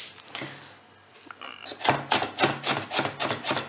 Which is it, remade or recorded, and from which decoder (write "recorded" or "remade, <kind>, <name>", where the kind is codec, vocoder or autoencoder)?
recorded